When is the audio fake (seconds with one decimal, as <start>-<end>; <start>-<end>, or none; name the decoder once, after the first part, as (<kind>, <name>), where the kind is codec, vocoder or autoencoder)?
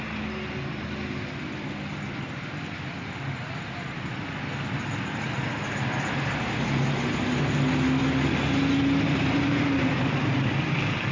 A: none